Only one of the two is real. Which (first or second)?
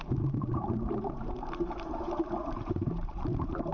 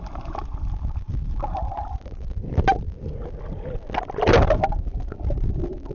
second